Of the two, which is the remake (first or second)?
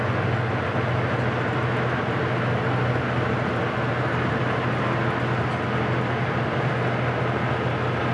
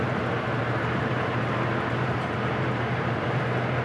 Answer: second